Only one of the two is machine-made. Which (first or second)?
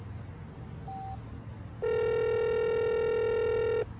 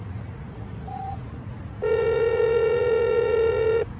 second